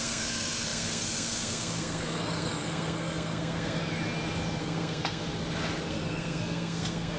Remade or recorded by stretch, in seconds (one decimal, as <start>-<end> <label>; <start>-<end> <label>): 0.0-3.8 remade; 3.8-4.6 recorded; 4.6-5.2 remade; 5.2-5.9 recorded; 5.9-7.2 remade